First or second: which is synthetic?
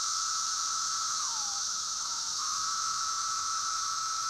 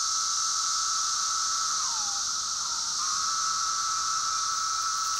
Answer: first